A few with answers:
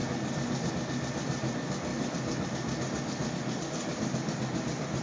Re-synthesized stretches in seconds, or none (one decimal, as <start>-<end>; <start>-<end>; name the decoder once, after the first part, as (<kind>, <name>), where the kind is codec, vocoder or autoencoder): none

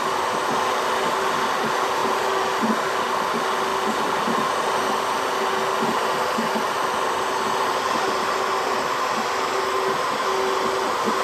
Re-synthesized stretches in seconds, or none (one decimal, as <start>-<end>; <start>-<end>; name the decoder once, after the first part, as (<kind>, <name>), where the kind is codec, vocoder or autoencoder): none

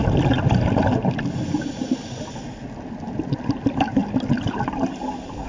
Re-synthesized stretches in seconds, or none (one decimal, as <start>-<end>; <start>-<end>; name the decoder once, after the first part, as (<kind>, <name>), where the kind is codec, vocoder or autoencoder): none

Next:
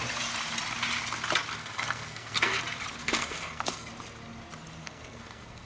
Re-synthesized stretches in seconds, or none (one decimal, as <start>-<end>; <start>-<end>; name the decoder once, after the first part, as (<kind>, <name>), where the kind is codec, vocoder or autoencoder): 1.6-2.6 (codec, SNAC); 3.0-3.9; 4.8-5.7

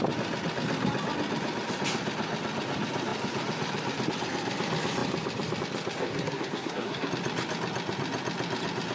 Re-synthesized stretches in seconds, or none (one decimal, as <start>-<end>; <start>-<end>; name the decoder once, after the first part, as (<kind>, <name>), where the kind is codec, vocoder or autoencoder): 6.0-7.1 (codec, SNAC)

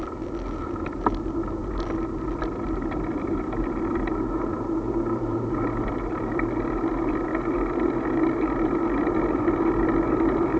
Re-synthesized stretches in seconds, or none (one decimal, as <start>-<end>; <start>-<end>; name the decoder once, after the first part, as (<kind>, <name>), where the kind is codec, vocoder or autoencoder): 0.0-10.6 (vocoder, BigVGAN v2)

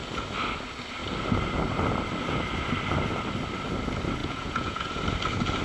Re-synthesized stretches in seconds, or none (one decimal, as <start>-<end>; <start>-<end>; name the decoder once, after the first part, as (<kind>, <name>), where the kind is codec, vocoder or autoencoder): 4.2-4.9 (vocoder, Vocos)